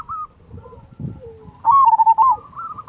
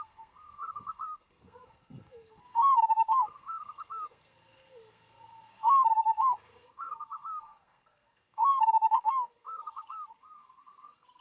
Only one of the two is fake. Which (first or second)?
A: second